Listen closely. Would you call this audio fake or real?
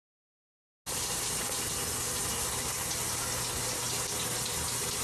real